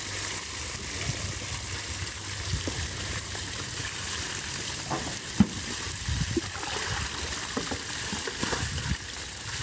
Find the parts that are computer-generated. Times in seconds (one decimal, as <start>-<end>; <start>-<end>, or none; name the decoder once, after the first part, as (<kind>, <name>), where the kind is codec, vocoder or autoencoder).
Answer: 2.5-3.5 (vocoder, BigVGAN v2)